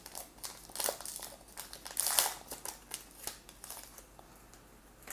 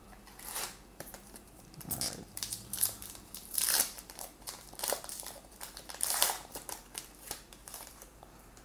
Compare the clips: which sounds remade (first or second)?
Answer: second